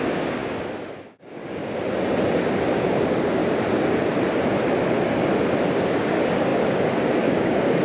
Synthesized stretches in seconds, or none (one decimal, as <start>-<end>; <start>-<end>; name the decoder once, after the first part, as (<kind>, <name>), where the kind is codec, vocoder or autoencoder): 0.0-0.4 (codec, DAC); 1.0-1.6; 2.8-3.4; 5.9-7.8